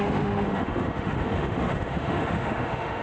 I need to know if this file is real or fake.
fake